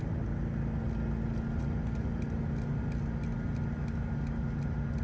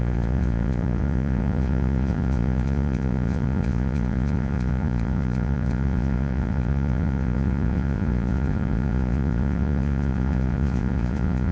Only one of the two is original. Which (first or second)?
first